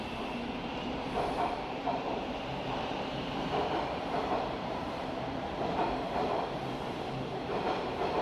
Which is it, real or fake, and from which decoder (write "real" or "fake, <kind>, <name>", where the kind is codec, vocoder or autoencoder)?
fake, vocoder, BigVGAN v2